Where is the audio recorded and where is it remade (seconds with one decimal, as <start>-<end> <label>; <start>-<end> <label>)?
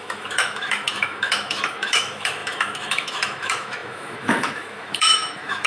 0.0-5.7 remade